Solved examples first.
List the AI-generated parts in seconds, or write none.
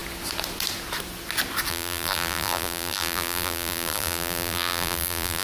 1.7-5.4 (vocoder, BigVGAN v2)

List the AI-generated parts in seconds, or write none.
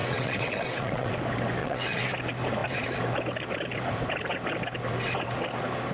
0.0-1.1 (vocoder, WaveNeXt); 1.6-2.1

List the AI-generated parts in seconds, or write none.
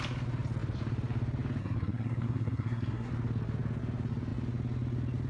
1.6-3.1 (codec, SNAC)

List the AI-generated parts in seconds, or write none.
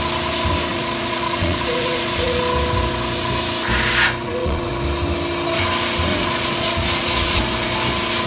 0.7-2.4 (vocoder, Vocos); 4.2-4.7; 6.1-7.4